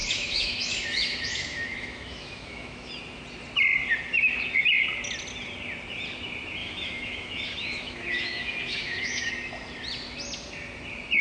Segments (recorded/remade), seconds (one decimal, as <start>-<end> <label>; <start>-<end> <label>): 0.0-2.9 remade; 2.9-6.6 recorded; 6.6-9.3 remade; 9.3-11.2 recorded

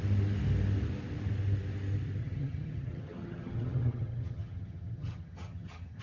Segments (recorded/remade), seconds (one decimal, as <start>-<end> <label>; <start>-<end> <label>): 0.0-2.2 recorded; 2.2-6.0 remade

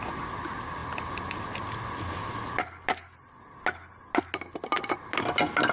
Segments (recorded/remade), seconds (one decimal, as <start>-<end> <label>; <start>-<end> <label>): 0.0-5.7 recorded

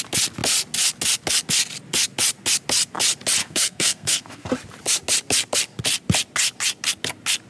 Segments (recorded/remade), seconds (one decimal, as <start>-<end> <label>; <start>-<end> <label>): 0.0-3.4 recorded; 3.4-4.5 remade; 4.5-7.5 recorded

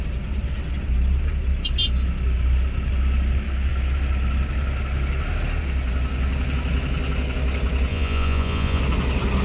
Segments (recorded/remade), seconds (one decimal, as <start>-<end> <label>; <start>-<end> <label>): 0.0-7.9 recorded; 7.9-8.8 remade; 8.8-9.4 recorded